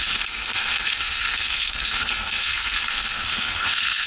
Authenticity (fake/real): fake